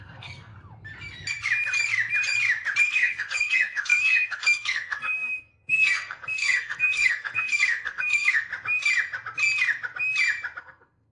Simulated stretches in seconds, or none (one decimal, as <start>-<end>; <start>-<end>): 0.0-0.5; 2.8-8.5; 10.6-11.1

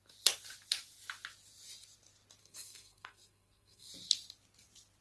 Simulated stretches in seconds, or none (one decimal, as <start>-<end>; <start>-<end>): 2.4-3.9

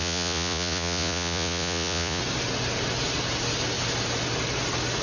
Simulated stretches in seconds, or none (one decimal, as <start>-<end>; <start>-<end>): 0.0-2.2

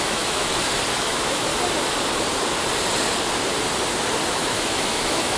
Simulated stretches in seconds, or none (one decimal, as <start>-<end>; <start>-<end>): 0.0-0.5; 1.0-1.5; 4.3-5.4

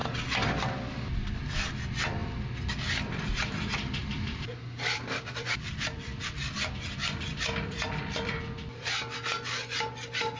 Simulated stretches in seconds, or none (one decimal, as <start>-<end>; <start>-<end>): 4.0-8.9

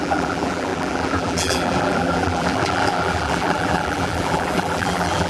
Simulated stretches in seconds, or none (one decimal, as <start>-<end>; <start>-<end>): 0.0-5.3

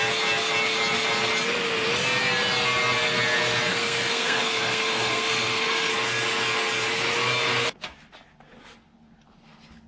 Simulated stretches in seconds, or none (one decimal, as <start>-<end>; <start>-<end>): 3.7-5.9